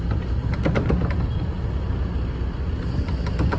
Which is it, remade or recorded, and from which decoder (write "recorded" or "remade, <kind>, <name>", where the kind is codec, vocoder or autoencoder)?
recorded